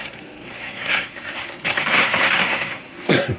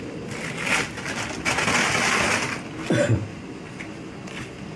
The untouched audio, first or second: second